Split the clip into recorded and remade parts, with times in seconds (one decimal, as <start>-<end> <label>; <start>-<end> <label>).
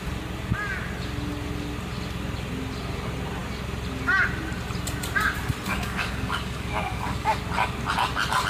0.0-5.7 recorded; 5.7-7.4 remade; 7.4-8.5 recorded